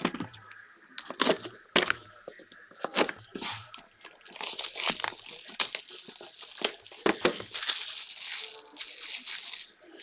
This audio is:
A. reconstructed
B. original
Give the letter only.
B